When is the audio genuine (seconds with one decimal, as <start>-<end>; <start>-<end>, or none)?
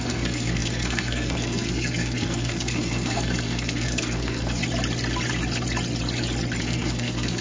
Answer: 4.6-6.6